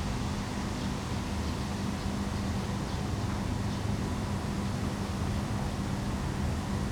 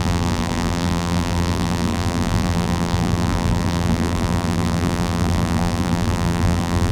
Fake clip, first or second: second